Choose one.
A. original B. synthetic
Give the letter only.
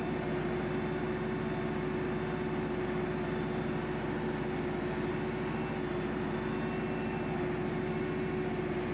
A